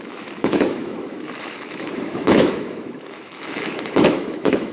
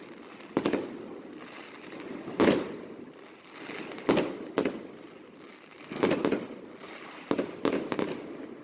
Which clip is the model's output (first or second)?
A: first